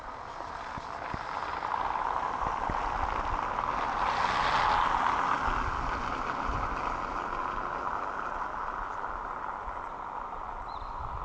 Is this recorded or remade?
recorded